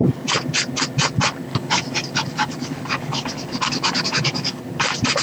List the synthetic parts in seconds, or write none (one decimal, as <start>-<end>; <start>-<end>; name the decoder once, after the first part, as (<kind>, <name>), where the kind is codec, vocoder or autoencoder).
1.5-4.6 (codec, DAC)